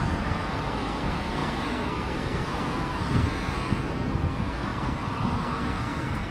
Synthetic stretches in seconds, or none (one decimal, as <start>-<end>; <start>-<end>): 0.0-6.3